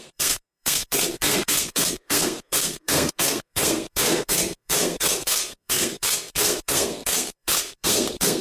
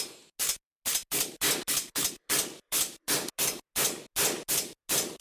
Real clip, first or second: second